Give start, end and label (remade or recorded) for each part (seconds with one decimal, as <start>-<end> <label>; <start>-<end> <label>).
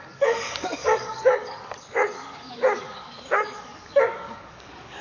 0.0-5.0 remade